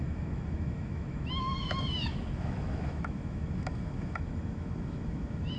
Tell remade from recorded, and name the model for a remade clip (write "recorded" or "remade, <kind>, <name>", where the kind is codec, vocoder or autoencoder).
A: remade, autoencoder, DAC-VAE